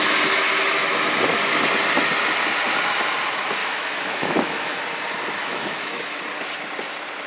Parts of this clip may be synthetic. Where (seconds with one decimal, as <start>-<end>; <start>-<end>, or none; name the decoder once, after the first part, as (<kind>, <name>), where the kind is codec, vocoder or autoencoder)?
3.6-4.8 (autoencoder, DAC-VAE); 5.4-6.2